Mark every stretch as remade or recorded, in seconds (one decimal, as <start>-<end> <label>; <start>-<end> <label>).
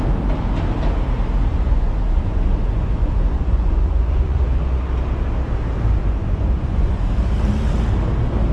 0.0-1.5 recorded; 1.5-4.6 remade; 4.6-6.0 recorded; 6.0-7.1 remade; 7.1-8.5 recorded